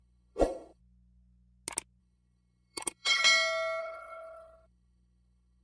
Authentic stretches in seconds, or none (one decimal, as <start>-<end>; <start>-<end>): 0.8-2.0; 3.2-3.8